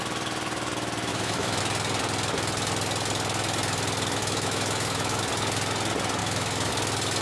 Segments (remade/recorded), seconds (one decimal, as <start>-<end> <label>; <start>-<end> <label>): 0.0-1.1 recorded; 1.1-1.6 remade; 1.6-4.2 recorded; 4.2-5.2 remade; 5.2-6.2 recorded; 6.2-6.7 remade; 6.7-7.2 recorded